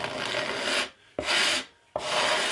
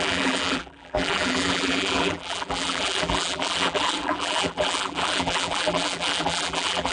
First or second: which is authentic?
first